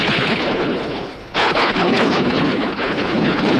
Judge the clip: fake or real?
fake